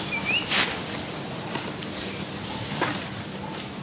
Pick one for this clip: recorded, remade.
recorded